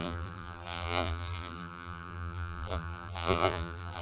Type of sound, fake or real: fake